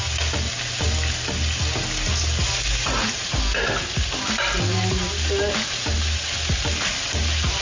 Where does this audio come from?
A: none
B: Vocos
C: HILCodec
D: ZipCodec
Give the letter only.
A